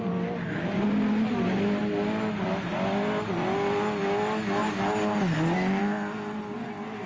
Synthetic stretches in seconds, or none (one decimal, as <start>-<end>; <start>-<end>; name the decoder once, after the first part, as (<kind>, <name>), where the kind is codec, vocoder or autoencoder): none